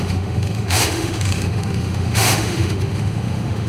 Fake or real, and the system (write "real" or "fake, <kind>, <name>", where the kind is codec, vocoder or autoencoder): fake, autoencoder, DAC-VAE